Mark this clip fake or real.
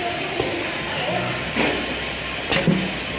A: real